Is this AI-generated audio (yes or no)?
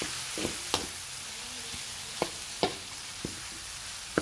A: no